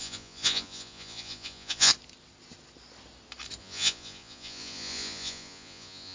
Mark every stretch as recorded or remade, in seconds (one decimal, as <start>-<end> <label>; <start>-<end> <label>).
0.0-1.9 remade; 1.9-3.6 recorded; 3.6-6.1 remade